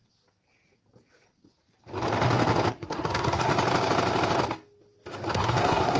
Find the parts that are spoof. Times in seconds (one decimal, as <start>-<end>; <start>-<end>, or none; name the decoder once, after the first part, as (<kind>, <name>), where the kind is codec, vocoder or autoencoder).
2.7-3.5 (codec, SNAC); 5.3-6.0